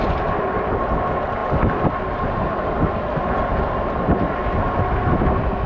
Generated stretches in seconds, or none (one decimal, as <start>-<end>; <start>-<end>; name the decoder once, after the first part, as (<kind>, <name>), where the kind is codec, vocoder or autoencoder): none